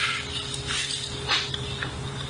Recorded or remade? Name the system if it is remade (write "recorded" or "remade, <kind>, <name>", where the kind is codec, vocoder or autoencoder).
recorded